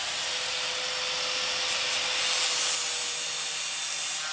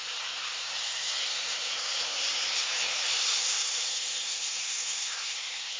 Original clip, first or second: first